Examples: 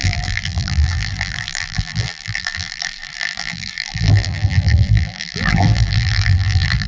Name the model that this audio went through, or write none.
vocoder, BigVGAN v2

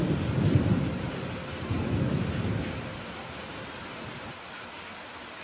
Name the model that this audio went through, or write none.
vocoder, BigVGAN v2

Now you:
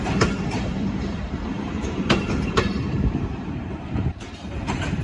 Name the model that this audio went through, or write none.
vocoder, BigVGAN v2